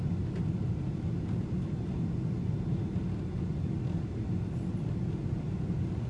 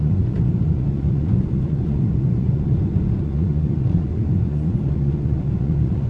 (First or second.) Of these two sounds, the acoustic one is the first